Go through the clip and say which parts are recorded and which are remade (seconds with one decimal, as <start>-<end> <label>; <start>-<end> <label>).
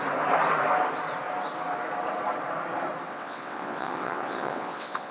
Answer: 0.0-3.1 recorded; 3.1-5.1 remade